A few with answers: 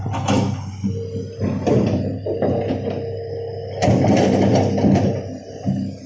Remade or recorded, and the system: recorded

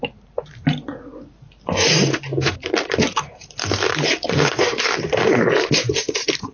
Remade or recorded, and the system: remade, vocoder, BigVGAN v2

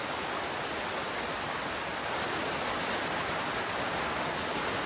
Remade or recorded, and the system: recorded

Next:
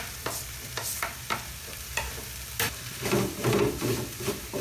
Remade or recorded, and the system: remade, vocoder, BigVGAN v2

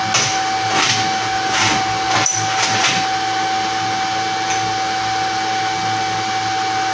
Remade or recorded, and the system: recorded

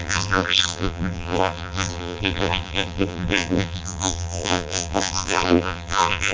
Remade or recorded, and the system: remade, vocoder, BigVGAN v2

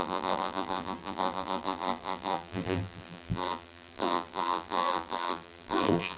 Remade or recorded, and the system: remade, vocoder, BigVGAN v2